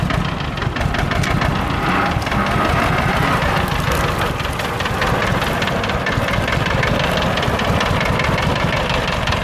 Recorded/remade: recorded